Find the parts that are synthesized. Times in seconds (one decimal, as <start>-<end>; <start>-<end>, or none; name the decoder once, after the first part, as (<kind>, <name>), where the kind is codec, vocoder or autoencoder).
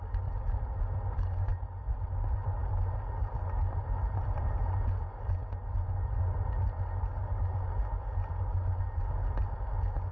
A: none